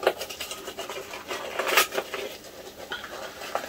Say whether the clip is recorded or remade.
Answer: recorded